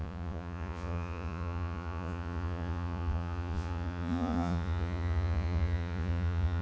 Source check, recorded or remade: remade